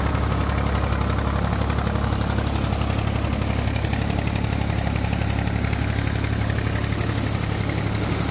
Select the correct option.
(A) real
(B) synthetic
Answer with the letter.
A